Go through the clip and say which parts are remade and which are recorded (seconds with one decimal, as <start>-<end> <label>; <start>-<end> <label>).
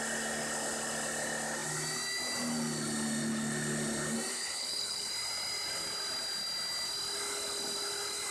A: 0.0-4.3 recorded; 4.3-5.1 remade; 5.1-8.3 recorded